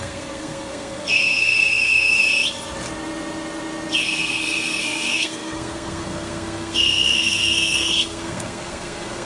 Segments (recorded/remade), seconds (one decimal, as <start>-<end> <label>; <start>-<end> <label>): 0.0-2.2 remade; 2.2-4.0 recorded; 4.0-9.3 remade